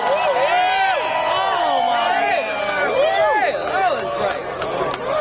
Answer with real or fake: real